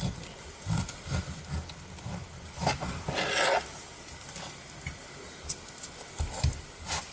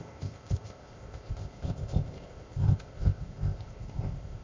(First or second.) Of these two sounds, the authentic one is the first